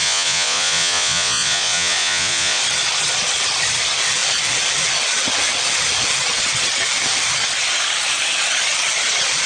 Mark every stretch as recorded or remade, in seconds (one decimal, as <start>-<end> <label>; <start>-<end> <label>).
0.0-2.6 remade; 2.6-9.5 recorded